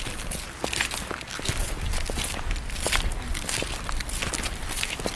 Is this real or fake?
real